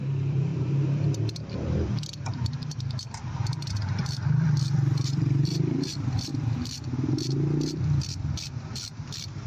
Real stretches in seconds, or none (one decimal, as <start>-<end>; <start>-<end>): 6.3-8.1

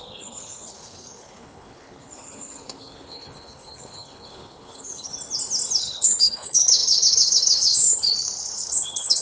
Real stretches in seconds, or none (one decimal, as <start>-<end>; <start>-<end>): 5.1-5.8